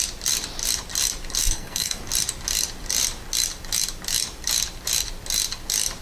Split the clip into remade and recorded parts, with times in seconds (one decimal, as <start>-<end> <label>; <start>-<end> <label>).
0.0-1.4 recorded; 1.4-2.0 remade; 2.0-6.0 recorded

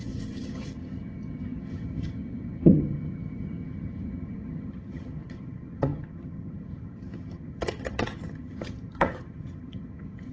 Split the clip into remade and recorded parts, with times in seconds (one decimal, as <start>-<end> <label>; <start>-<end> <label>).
0.0-10.3 remade

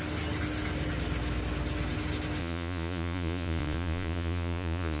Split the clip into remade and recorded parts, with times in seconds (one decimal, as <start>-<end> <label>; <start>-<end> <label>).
0.0-2.4 recorded; 2.4-5.0 remade

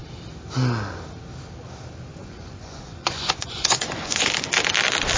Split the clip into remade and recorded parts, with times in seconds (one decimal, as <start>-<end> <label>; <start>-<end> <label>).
0.0-2.1 recorded; 2.1-4.3 remade; 4.3-5.2 recorded

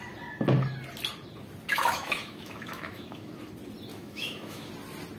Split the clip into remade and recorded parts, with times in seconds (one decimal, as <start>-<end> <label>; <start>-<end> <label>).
0.0-1.7 recorded; 1.7-3.3 remade; 3.3-3.9 recorded; 3.9-4.7 remade; 4.7-5.2 recorded

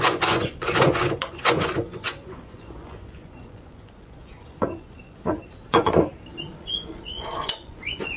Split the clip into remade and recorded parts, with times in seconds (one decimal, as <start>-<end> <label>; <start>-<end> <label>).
0.0-6.1 remade; 6.1-6.6 recorded; 6.6-8.2 remade

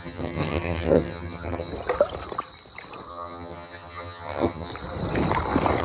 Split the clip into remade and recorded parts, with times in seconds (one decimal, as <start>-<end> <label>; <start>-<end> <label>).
0.0-1.7 remade; 1.7-3.1 recorded; 3.1-4.7 remade; 4.7-5.8 recorded